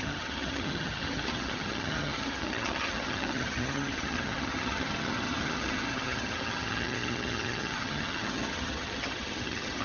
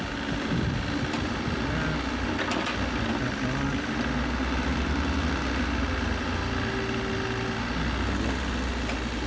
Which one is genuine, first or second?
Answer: second